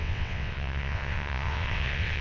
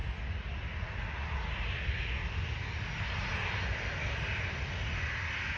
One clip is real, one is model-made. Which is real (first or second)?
second